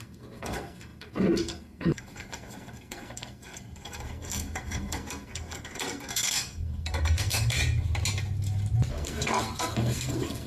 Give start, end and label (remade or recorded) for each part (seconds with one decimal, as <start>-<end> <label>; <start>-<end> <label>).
0.0-7.6 remade; 7.6-8.9 recorded; 8.9-10.5 remade